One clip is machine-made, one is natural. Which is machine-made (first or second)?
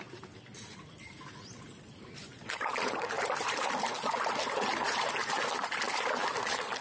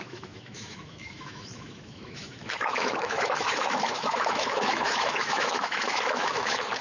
second